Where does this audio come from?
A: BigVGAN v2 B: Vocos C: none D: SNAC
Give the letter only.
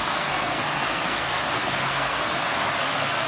D